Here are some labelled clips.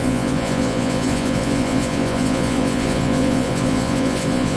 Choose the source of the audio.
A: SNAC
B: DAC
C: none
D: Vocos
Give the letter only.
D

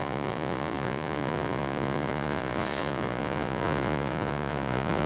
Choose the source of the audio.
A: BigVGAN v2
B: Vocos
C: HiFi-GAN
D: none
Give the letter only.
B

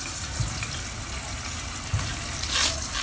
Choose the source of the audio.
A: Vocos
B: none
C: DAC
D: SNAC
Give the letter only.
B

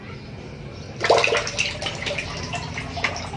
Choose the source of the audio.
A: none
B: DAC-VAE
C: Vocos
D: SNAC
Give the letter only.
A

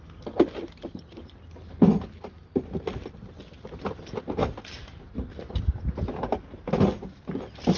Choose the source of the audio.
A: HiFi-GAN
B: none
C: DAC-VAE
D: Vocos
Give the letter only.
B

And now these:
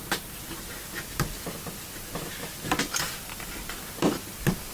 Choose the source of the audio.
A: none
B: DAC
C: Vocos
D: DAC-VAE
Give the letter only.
A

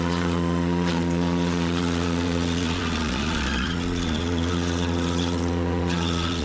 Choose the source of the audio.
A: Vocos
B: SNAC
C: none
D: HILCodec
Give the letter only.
A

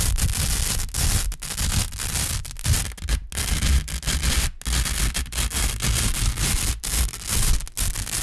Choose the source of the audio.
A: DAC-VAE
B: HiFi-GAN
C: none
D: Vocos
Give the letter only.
C